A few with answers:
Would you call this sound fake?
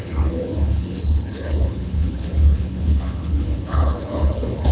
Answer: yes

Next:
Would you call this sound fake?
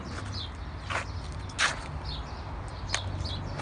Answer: no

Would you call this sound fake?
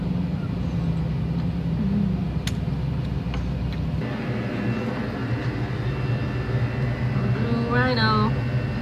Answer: no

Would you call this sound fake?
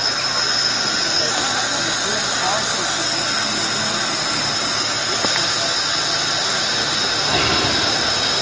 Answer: no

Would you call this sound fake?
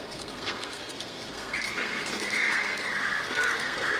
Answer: yes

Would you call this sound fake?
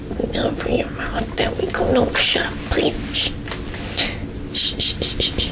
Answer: no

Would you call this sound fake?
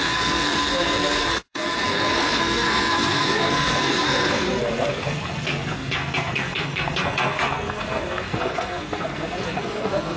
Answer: yes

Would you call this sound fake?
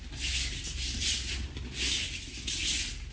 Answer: no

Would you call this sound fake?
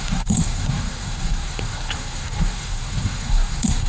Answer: yes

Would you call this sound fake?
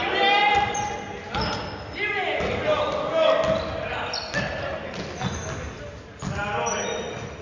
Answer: no